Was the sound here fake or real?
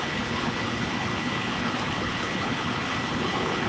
fake